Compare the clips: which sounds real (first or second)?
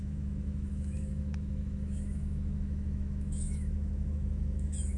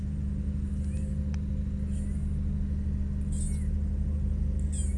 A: second